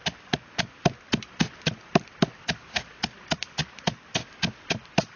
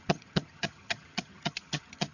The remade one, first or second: second